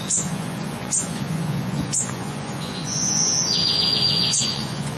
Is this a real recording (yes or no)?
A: no